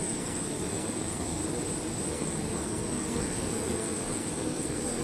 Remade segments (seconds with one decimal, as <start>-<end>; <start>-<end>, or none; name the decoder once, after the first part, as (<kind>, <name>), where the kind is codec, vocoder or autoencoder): 0.0-1.4 (codec, SNAC); 2.1-5.0